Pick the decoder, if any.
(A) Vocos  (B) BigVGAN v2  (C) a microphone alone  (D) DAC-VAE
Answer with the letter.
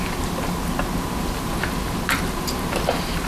C